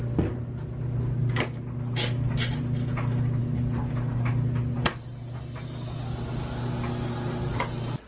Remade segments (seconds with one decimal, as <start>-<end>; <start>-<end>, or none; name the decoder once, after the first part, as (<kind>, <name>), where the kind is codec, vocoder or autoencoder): none